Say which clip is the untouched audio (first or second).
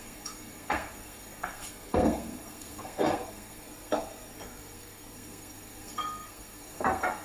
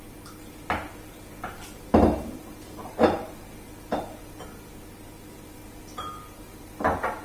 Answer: second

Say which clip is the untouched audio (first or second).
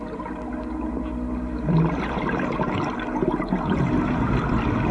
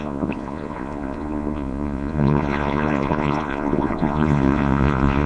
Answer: first